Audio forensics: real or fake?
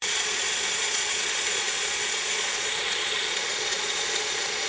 fake